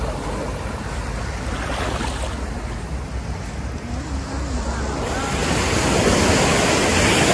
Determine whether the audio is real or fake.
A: real